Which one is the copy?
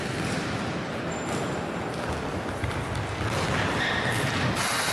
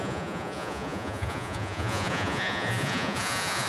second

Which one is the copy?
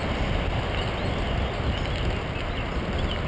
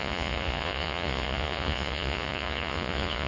second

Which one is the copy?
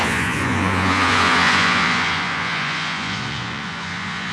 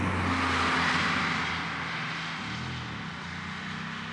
first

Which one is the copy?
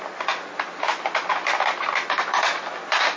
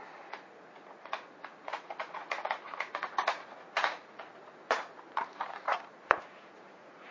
second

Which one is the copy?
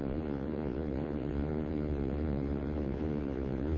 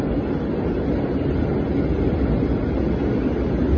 first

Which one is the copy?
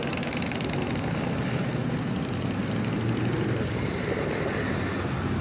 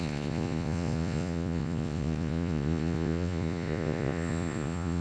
second